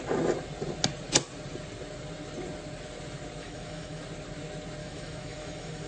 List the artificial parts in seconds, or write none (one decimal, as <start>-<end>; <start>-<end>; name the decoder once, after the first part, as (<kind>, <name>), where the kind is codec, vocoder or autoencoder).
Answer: 3.4-4.0 (autoencoder, DAC-VAE); 4.8-5.9